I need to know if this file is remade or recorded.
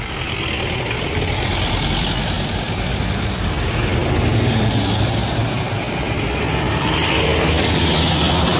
recorded